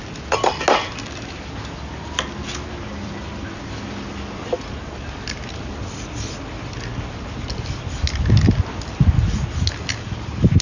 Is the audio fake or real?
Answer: real